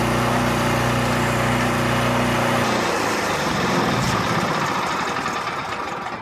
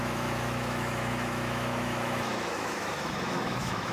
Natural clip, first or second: first